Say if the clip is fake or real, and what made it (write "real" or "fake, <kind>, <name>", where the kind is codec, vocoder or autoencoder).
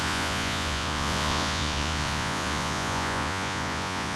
fake, vocoder, Vocos